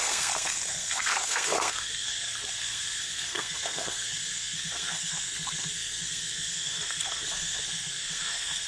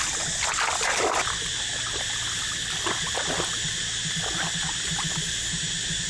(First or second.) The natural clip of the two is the second